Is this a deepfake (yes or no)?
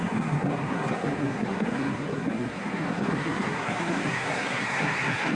yes